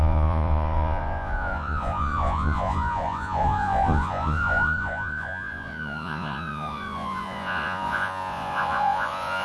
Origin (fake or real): fake